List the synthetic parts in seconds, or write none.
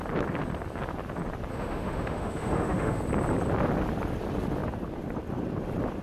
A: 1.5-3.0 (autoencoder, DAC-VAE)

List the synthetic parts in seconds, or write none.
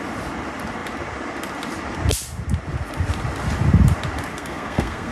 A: 4.3-5.1 (codec, SNAC)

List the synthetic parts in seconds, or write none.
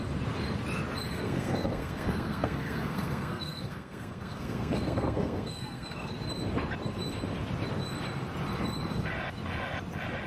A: 1.1-6.1 (codec, SNAC)